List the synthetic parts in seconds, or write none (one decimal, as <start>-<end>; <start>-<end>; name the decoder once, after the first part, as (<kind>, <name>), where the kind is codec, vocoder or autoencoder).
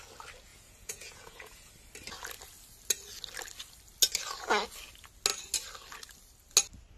0.5-1.7 (vocoder, Vocos)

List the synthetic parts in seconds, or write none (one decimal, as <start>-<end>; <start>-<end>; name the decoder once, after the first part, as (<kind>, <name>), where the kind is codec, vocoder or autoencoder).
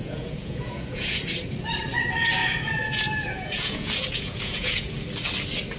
0.0-1.2 (vocoder, Vocos); 2.4-4.9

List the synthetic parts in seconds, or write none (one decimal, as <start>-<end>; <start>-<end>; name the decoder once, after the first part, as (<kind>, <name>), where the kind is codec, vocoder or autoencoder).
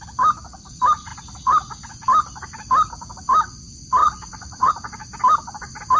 4.0-4.7 (vocoder, Vocos)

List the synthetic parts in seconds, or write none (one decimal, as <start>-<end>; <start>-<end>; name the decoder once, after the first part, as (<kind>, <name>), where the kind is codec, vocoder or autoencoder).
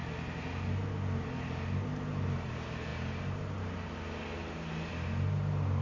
none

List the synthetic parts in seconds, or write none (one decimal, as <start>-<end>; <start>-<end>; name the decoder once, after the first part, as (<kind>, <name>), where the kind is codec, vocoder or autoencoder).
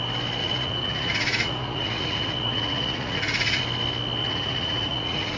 0.4-3.6 (vocoder, Vocos); 4.2-5.4